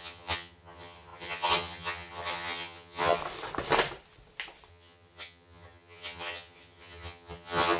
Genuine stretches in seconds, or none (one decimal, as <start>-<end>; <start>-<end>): 3.2-4.7